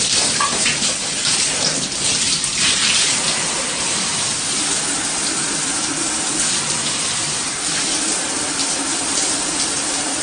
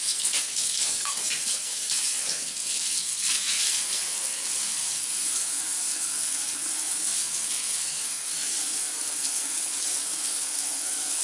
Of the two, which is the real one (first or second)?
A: first